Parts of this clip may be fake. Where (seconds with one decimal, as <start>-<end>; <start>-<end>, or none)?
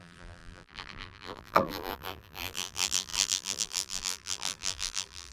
0.0-5.3